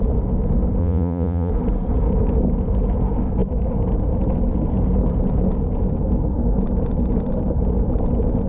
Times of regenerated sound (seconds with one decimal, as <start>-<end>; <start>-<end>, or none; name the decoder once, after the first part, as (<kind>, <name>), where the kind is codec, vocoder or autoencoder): 0.8-1.5 (vocoder, Vocos)